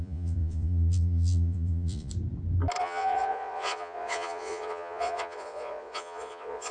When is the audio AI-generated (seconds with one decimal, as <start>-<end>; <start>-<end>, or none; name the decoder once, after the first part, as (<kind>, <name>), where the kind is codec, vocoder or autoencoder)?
0.0-2.1 (vocoder, Vocos); 2.8-6.7